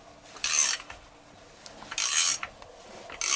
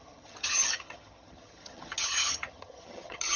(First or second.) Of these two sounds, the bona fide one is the first